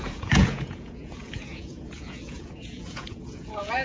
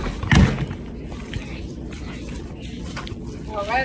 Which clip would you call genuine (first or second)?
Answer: second